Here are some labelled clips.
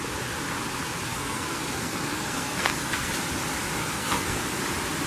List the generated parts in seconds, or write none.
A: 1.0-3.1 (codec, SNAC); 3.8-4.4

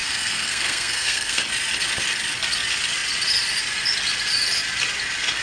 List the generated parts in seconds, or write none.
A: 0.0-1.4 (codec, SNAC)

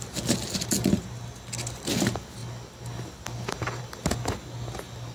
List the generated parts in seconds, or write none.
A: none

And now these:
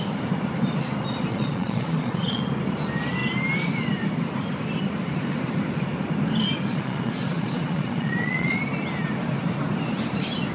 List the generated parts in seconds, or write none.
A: 1.3-2.4 (vocoder, Vocos); 6.7-8.6

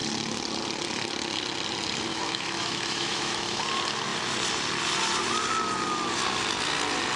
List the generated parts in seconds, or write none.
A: 2.1-3.6 (autoencoder, DAC-VAE)

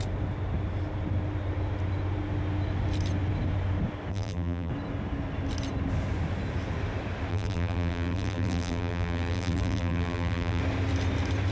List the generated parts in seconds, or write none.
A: 4.1-4.7 (vocoder, BigVGAN v2); 7.3-10.6

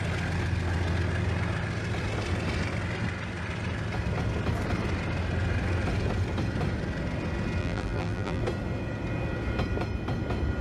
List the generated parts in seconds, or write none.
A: 7.6-8.4 (vocoder, BigVGAN v2)

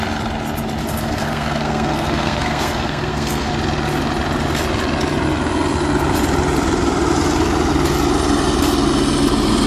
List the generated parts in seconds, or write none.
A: 0.8-3.5 (codec, SNAC)